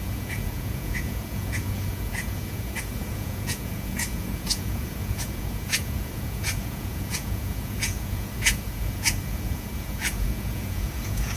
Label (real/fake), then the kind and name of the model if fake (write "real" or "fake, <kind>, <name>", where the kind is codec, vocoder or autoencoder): fake, vocoder, Vocos